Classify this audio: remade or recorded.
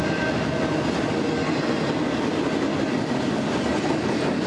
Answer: recorded